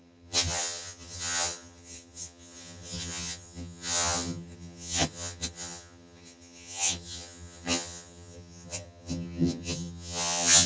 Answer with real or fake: fake